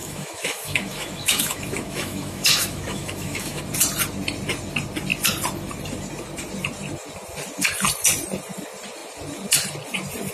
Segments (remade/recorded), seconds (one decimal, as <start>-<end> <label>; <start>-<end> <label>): 0.0-3.6 remade; 3.6-10.3 recorded